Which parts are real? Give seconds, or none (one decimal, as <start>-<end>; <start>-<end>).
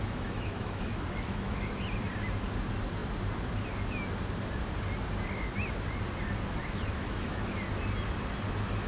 1.8-6.6; 7.5-8.9